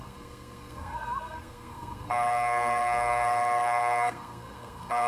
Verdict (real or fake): fake